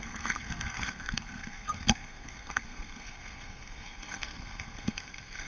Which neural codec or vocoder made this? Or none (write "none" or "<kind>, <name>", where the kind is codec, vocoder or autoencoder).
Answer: codec, SNAC